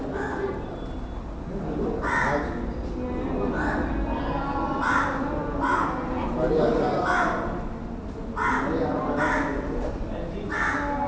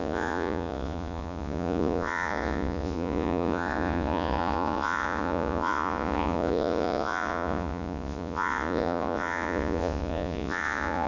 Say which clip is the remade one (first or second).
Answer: second